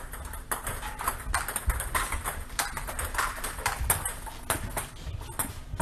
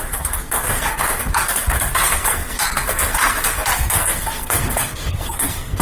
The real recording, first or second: first